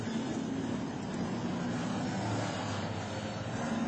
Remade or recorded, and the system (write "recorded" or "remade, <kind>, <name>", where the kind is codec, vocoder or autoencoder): recorded